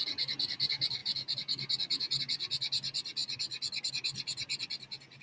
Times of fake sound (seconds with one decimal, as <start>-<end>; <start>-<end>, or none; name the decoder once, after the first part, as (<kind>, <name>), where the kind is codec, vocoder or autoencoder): none